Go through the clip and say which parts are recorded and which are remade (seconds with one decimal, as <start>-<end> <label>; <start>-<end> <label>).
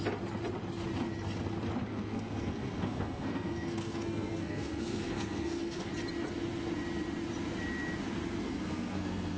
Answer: 0.0-1.9 recorded; 1.9-5.9 remade; 5.9-8.4 recorded; 8.4-9.4 remade